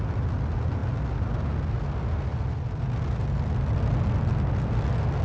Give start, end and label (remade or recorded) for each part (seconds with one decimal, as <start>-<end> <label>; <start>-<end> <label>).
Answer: 0.0-5.2 recorded